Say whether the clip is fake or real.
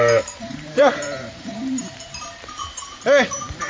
fake